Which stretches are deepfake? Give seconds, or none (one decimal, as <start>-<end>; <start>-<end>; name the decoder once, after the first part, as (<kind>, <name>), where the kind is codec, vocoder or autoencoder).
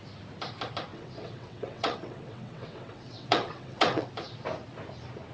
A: 0.9-4.1 (vocoder, WaveNeXt)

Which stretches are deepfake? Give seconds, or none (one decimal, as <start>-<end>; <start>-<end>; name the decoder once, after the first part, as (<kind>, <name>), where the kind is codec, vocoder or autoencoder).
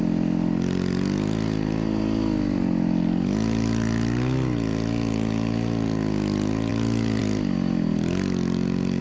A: none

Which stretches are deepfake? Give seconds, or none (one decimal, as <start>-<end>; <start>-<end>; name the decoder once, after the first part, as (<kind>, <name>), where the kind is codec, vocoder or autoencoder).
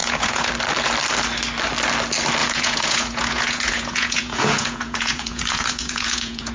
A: 0.0-0.5 (vocoder, Vocos); 2.4-6.5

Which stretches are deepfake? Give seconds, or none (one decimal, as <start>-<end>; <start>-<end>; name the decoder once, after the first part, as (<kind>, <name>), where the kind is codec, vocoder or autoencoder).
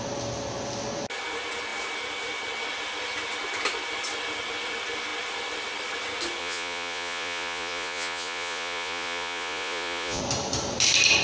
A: 6.4-10.2 (vocoder, Vocos)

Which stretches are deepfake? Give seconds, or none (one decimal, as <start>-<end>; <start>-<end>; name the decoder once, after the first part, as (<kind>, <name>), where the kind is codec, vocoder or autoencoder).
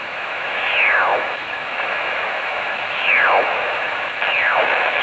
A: 0.0-5.0 (autoencoder, DAC-VAE)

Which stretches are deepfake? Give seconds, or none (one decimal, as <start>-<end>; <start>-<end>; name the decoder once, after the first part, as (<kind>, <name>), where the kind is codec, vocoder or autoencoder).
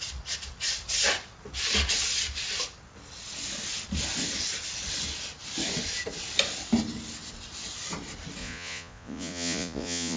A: 8.4-10.2 (vocoder, Vocos)